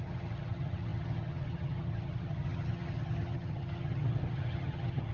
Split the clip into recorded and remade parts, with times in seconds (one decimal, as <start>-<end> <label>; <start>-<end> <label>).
0.0-5.1 remade